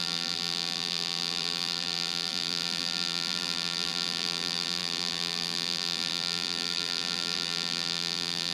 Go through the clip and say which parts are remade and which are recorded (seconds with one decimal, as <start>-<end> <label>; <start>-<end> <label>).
0.0-8.5 remade